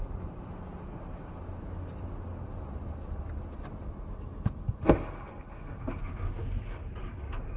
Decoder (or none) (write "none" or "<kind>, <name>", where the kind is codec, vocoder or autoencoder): none